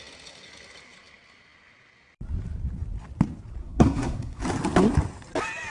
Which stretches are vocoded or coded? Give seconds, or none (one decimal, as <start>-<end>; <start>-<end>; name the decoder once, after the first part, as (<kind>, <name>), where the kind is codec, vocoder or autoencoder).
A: 3.6-4.4 (codec, SNAC)